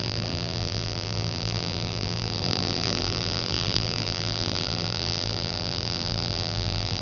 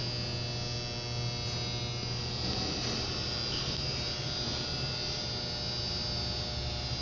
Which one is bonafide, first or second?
second